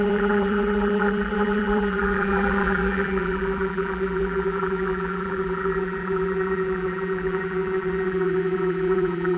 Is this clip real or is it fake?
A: fake